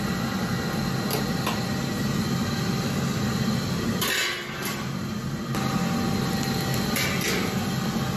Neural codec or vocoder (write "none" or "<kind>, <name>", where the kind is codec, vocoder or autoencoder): none